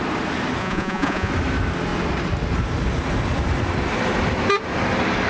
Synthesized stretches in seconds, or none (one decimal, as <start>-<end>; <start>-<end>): 0.6-1.3